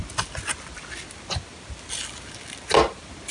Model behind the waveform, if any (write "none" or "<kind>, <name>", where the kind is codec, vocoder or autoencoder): none